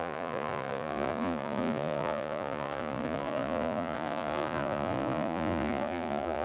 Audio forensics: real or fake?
fake